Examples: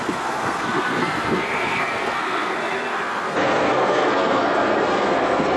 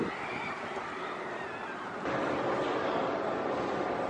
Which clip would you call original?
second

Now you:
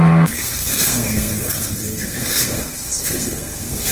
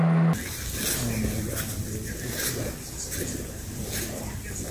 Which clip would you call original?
second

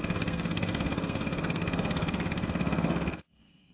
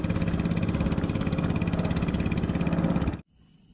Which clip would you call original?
second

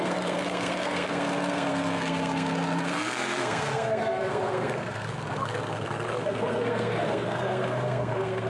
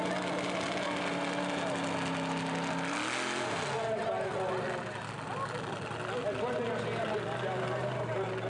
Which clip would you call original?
second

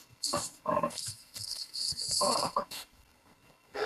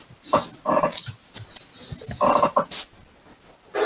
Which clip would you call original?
second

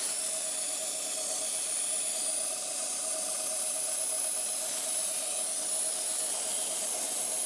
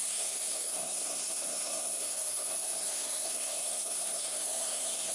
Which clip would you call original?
first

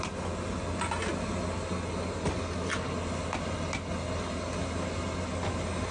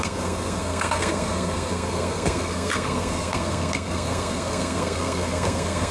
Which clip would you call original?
first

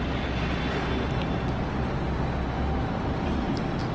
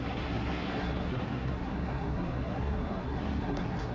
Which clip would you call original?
first